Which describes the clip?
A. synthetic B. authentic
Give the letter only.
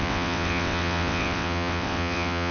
A